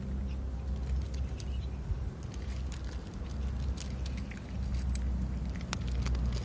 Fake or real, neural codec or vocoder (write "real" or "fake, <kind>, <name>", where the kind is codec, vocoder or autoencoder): real